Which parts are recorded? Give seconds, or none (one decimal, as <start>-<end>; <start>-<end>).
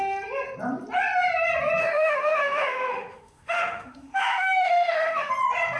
0.0-1.8; 5.3-5.8